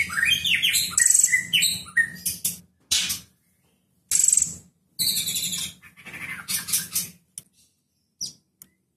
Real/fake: real